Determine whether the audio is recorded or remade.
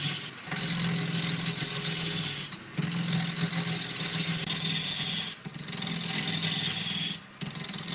recorded